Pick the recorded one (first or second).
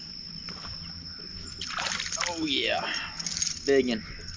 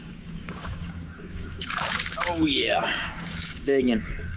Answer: first